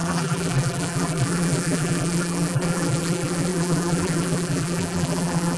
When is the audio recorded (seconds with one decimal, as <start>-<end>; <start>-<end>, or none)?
none